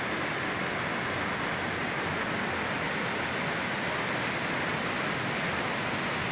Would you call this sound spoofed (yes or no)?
no